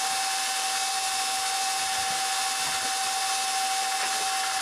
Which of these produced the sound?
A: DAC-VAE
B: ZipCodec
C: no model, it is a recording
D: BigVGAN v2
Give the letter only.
C